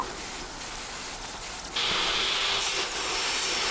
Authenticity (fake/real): real